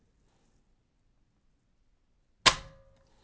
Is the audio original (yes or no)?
yes